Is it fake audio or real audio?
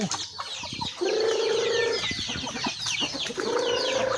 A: real